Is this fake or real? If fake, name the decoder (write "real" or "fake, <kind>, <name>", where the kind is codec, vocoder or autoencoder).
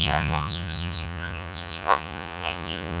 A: fake, vocoder, Vocos